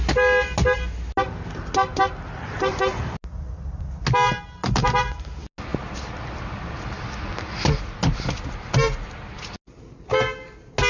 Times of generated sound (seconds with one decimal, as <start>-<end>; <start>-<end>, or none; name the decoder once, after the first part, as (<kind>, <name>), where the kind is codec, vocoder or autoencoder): none